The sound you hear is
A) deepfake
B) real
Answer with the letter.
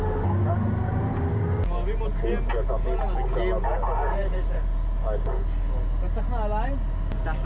B